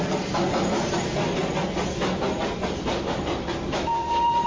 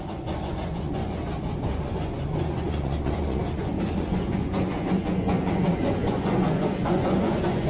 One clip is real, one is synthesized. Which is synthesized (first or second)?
second